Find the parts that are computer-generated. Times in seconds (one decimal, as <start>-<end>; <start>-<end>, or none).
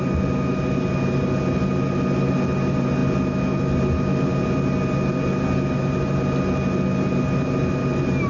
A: none